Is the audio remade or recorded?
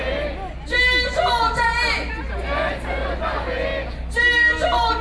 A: recorded